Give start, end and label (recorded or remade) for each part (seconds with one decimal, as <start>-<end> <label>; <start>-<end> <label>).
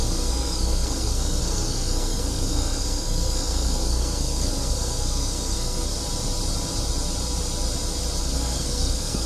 0.0-5.9 remade; 5.9-8.2 recorded; 8.2-9.3 remade